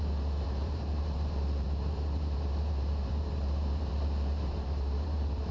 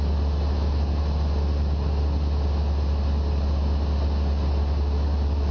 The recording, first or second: second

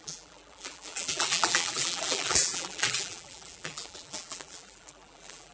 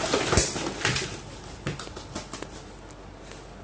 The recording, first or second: second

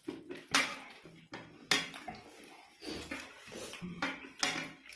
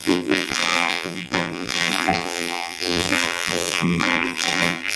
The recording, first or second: first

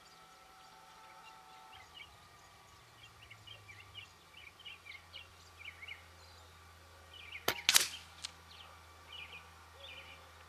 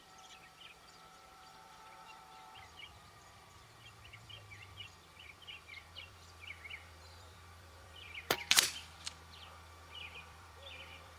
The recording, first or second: first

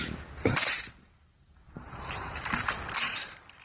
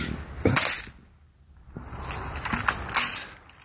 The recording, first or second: second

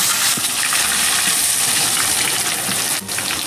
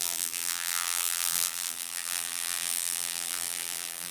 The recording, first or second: first